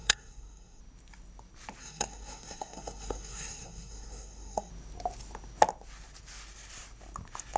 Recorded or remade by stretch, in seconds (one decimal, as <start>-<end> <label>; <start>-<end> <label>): 0.0-0.8 remade; 0.8-1.8 recorded; 1.8-4.7 remade; 4.7-7.6 recorded